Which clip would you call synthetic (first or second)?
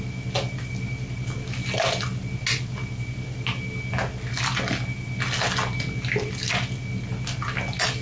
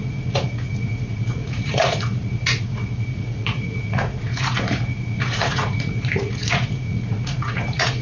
second